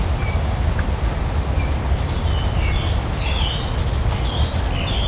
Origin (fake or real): real